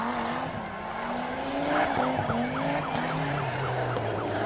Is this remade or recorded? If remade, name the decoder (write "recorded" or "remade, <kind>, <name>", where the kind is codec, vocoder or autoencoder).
recorded